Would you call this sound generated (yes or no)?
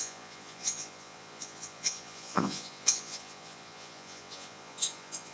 yes